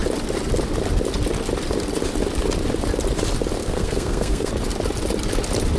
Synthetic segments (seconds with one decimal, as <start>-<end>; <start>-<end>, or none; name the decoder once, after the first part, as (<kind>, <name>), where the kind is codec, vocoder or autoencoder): 3.6-4.5 (codec, SNAC)